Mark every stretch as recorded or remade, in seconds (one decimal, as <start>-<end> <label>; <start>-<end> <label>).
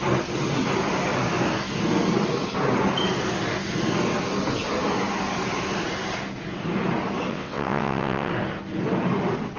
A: 0.0-7.3 recorded; 7.3-8.3 remade; 8.3-9.6 recorded